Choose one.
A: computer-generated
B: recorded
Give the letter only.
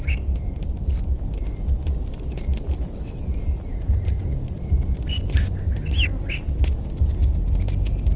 B